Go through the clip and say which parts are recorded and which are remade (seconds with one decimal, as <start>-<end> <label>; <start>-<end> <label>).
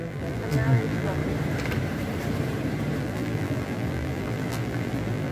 0.0-1.2 remade; 1.2-3.0 recorded; 3.0-5.3 remade